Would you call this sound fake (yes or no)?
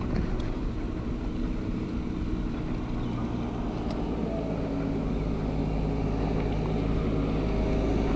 no